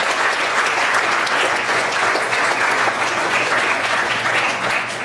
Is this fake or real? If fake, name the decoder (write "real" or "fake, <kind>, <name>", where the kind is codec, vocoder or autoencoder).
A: fake, vocoder, Vocos